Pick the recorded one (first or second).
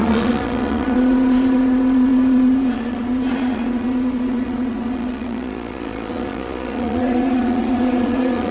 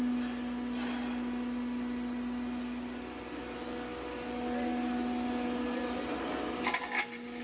second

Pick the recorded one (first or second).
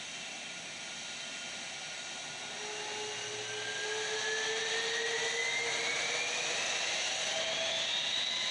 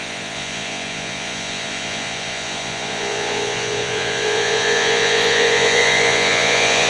first